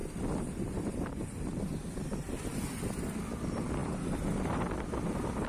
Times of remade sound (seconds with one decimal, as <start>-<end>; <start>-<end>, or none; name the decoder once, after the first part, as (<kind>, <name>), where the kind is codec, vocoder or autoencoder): 0.0-2.8 (vocoder, BigVGAN v2); 3.8-4.8